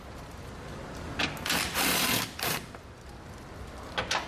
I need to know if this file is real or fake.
real